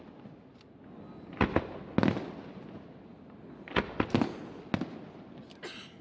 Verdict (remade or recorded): recorded